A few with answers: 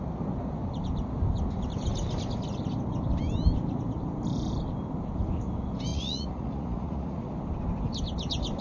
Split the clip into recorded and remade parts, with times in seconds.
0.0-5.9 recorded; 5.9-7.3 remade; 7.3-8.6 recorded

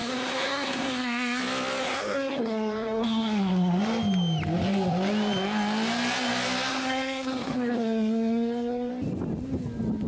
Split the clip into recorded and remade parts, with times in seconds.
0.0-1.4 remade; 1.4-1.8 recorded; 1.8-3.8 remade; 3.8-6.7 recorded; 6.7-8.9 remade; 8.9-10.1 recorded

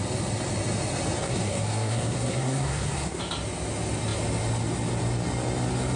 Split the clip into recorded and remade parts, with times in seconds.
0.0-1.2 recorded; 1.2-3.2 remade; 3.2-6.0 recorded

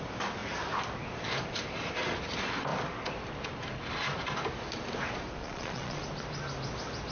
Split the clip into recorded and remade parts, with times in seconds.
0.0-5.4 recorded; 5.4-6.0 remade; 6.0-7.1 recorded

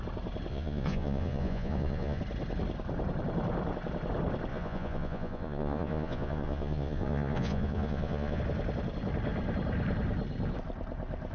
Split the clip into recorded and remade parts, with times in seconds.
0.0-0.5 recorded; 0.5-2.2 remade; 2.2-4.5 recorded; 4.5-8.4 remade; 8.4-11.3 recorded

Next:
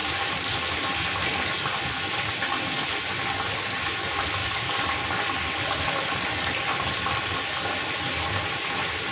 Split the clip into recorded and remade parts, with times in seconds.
0.0-1.7 recorded; 1.7-2.7 remade; 2.7-4.4 recorded; 4.4-7.5 remade; 7.5-9.1 recorded